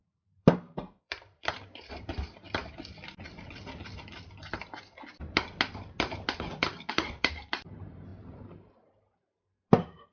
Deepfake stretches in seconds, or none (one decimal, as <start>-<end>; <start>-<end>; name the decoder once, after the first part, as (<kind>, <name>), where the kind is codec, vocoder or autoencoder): 0.0-2.6 (vocoder, BigVGAN v2); 6.9-8.1; 8.7-10.1